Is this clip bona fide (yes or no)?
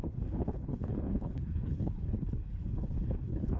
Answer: no